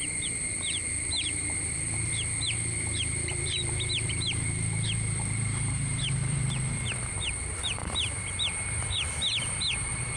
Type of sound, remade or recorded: remade